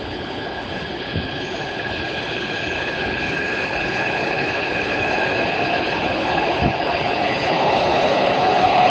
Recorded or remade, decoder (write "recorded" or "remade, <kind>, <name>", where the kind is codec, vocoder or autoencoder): remade, codec, HILCodec